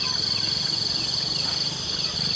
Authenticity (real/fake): real